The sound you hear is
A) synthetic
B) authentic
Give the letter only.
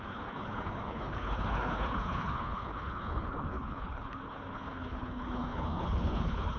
A